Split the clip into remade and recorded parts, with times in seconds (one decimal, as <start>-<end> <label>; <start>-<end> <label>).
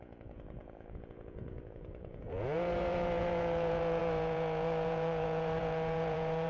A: 0.0-6.5 remade